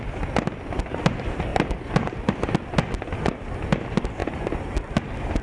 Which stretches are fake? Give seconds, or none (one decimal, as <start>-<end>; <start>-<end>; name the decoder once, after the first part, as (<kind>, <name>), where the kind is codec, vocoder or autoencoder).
1.5-2.5 (vocoder, BigVGAN v2)